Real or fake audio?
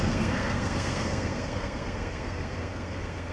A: fake